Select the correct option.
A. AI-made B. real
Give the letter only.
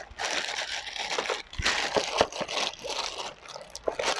B